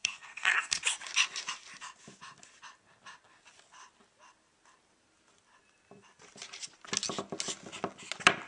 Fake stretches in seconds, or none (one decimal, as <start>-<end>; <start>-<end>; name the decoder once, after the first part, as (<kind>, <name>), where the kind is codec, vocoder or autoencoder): 0.0-0.8 (codec, SNAC)